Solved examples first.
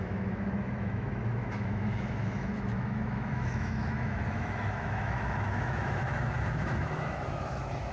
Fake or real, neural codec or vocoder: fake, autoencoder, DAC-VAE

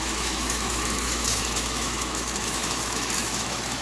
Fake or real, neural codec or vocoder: fake, autoencoder, DAC-VAE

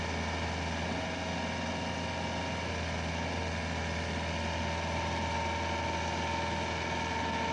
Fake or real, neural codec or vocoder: real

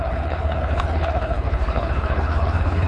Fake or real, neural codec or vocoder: fake, codec, HILCodec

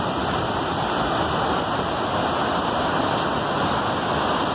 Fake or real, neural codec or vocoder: real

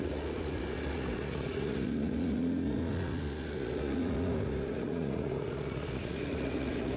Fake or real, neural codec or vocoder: fake, vocoder, Vocos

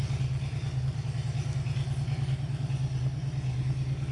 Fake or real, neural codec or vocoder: real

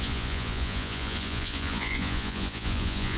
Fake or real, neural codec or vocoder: fake, vocoder, Vocos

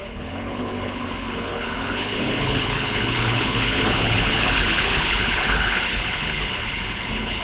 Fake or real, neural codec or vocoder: fake, codec, HILCodec